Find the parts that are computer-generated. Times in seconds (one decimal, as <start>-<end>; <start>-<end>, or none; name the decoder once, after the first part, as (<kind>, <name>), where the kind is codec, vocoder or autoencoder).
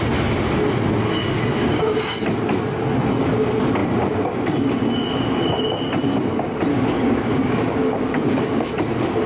1.6-2.1 (codec, DAC); 6.7-8.7